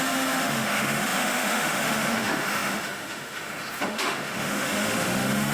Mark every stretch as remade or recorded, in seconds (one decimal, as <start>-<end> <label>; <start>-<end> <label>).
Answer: 0.0-5.5 remade